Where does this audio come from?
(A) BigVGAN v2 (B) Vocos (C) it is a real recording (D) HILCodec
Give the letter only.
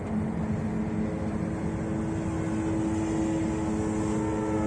C